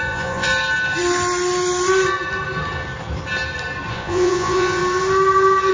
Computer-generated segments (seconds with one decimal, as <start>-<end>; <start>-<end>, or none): 0.0-0.5; 3.9-4.8